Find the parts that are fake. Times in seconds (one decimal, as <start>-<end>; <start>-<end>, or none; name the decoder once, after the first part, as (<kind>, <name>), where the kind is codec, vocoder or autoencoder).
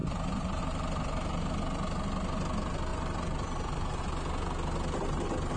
0.0-0.6 (vocoder, BigVGAN v2); 2.9-4.0